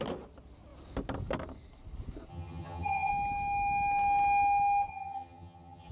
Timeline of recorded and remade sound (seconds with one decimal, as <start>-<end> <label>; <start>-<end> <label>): 0.0-2.3 recorded; 2.3-3.1 remade; 3.1-4.9 recorded; 4.9-5.9 remade